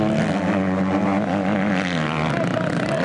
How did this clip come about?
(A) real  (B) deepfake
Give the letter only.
A